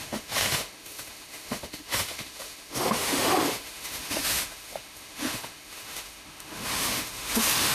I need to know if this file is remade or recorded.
remade